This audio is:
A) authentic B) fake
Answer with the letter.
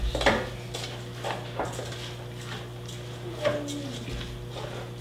A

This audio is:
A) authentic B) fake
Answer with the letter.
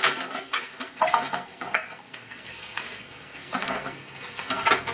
B